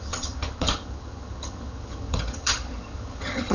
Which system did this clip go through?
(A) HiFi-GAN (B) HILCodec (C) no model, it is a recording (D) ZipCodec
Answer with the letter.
A